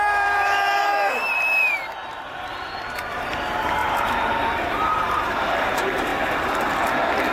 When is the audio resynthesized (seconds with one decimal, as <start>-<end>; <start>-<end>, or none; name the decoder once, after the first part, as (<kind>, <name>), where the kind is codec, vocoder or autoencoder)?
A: 0.0-3.8 (vocoder, BigVGAN v2); 4.7-6.1